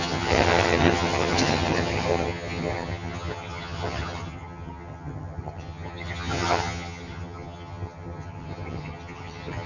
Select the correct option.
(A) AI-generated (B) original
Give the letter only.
A